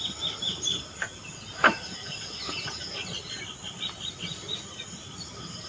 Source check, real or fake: real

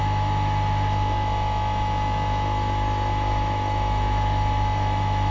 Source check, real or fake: fake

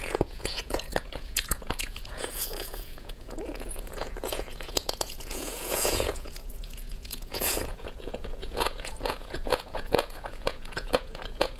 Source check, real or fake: fake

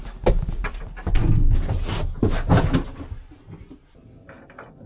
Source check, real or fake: real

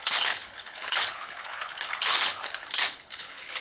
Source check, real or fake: fake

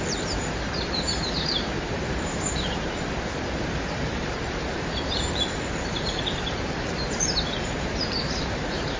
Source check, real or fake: fake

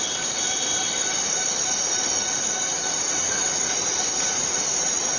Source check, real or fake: real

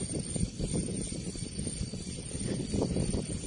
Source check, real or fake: real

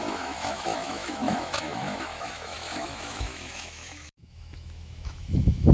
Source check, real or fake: fake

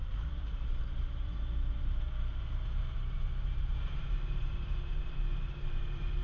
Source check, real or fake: fake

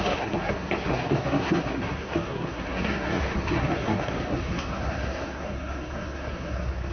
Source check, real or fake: fake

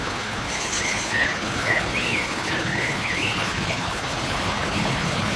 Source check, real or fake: fake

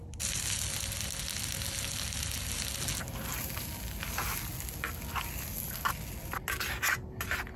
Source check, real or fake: real